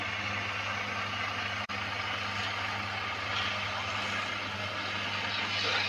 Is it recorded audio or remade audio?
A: recorded